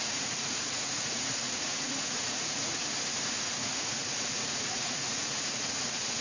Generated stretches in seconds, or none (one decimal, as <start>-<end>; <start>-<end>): 0.0-2.8; 3.6-6.2